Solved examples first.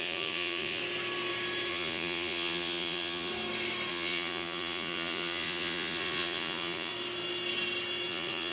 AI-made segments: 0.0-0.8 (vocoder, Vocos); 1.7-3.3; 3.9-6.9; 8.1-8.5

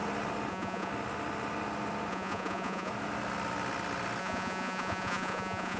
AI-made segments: 0.5-0.9 (vocoder, Vocos); 2.1-2.9; 4.2-5.8